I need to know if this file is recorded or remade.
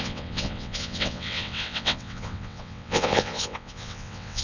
remade